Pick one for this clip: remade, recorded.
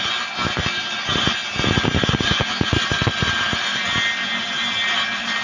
recorded